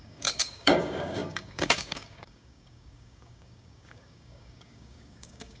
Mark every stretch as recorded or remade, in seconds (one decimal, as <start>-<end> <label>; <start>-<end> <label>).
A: 0.0-5.6 remade